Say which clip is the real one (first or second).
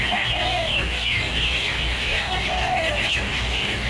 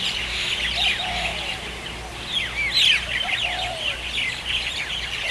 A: second